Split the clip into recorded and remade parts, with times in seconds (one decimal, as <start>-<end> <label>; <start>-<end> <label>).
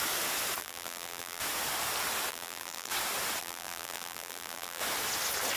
0.0-0.6 recorded; 0.6-1.4 remade; 1.4-2.3 recorded; 2.3-2.9 remade; 2.9-3.4 recorded; 3.4-4.8 remade; 4.8-5.6 recorded